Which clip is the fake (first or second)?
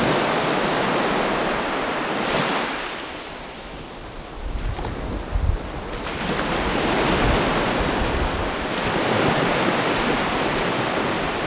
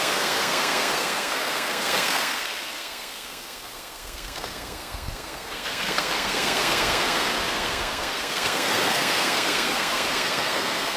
second